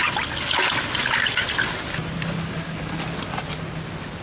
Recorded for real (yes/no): yes